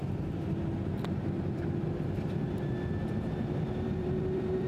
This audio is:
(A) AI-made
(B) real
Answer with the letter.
A